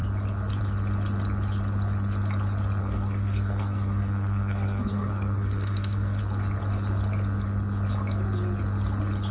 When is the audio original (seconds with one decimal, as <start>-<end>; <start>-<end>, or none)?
0.0-2.8; 6.2-9.3